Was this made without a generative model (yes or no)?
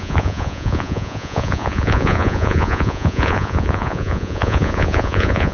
no